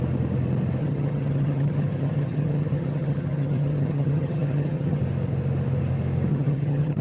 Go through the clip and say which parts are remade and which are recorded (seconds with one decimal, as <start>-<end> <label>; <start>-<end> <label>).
0.0-0.8 recorded; 0.8-5.0 remade; 5.0-6.3 recorded; 6.3-7.0 remade